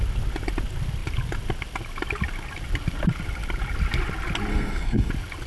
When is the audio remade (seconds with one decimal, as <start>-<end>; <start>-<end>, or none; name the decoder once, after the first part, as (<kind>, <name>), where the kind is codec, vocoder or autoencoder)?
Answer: 4.5-5.1 (codec, SNAC)